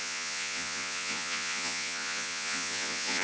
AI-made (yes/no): yes